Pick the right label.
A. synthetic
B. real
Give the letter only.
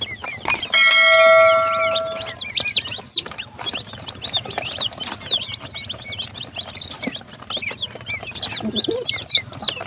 B